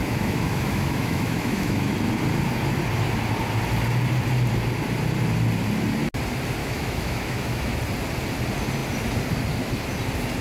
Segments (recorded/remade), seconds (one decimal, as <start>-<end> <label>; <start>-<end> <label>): 0.0-1.9 remade; 1.9-6.6 recorded; 6.6-7.8 remade; 7.8-10.4 recorded